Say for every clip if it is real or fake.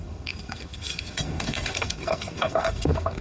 fake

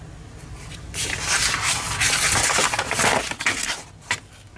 real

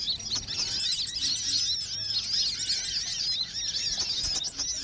real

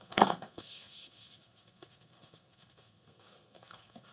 fake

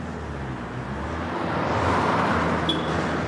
real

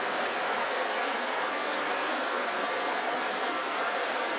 fake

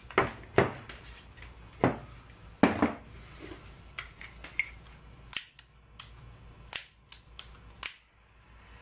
real